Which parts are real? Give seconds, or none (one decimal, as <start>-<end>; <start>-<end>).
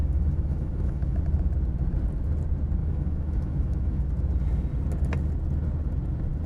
1.2-2.8; 4.1-6.5